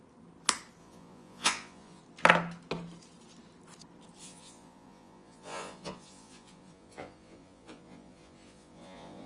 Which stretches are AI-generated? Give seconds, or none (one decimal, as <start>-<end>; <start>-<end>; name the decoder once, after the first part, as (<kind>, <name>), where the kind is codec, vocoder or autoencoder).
0.8-2.0 (vocoder, Vocos); 4.2-9.3